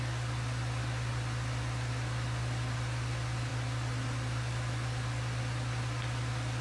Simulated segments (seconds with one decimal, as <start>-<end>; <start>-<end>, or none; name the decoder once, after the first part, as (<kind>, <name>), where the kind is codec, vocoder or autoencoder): none